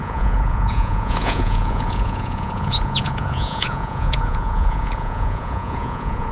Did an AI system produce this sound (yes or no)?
yes